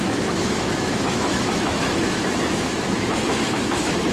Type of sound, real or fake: fake